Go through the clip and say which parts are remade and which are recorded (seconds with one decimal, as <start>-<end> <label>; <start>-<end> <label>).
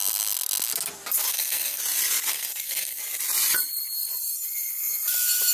0.0-1.3 recorded; 1.3-1.8 remade; 1.8-2.3 recorded; 2.3-3.0 remade; 3.0-5.5 recorded